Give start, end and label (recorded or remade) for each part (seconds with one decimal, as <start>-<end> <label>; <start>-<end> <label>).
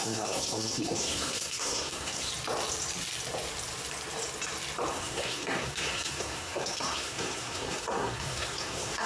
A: 0.0-2.3 remade; 2.3-4.9 recorded; 4.9-9.1 remade